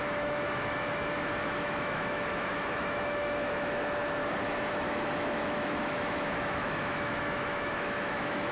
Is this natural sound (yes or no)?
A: no